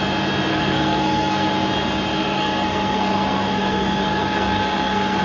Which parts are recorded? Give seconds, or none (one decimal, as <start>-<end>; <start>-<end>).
0.0-0.5; 1.5-2.1